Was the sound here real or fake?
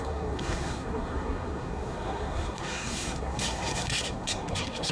fake